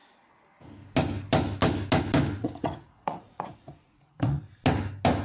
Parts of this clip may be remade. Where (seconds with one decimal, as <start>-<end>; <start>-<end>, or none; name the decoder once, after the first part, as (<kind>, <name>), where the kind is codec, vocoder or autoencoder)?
2.4-4.4 (vocoder, Vocos)